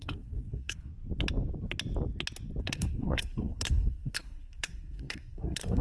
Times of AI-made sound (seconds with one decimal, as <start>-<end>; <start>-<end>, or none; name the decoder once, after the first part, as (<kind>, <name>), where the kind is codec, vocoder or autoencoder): 0.0-0.9 (codec, SNAC); 2.6-5.8